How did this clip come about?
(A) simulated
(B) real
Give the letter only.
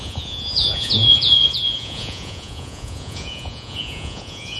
A